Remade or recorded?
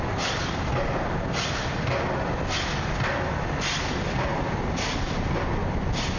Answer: recorded